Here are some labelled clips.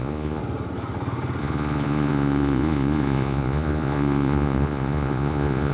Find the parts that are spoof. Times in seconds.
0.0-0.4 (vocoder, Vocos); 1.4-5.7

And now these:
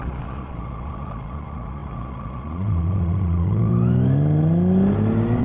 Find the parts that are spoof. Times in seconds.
0.0-3.7 (vocoder, Vocos)

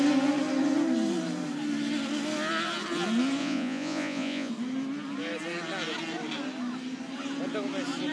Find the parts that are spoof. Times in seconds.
3.4-4.5 (vocoder, Vocos)

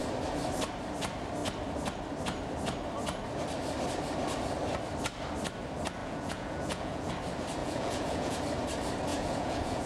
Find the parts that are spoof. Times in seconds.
6.0-7.1 (vocoder, Vocos); 7.6-8.4; 9.1-9.9

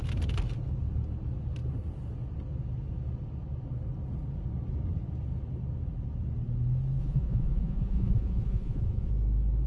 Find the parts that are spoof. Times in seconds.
7.0-9.1 (vocoder, Vocos)

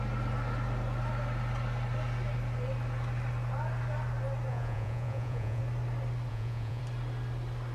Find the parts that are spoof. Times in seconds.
4.5-5.6 (vocoder, Vocos); 6.3-6.8

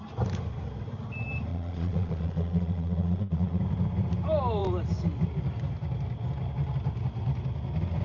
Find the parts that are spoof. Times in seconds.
1.5-3.6 (vocoder, Vocos)